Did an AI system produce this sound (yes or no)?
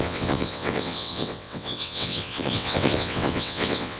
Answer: yes